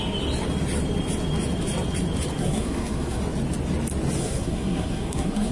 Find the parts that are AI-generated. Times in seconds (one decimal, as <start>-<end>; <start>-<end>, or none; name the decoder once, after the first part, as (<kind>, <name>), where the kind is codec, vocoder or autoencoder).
2.4-3.2 (codec, SNAC); 4.2-5.5